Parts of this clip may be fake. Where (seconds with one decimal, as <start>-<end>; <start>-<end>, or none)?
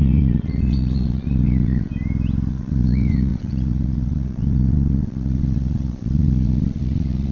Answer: 0.0-1.9; 2.5-7.3